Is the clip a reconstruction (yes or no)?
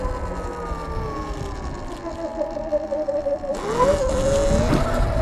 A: no